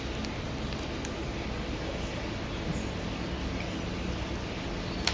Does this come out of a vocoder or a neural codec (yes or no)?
no